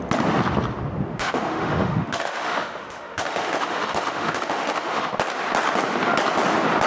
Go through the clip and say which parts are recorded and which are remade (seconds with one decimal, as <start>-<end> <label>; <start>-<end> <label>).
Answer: 0.0-1.1 recorded; 1.1-5.1 remade; 5.1-6.9 recorded